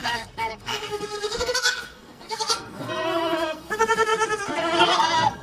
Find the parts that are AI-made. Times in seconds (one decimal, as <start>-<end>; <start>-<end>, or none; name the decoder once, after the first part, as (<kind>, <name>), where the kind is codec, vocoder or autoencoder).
0.0-5.4 (codec, SNAC)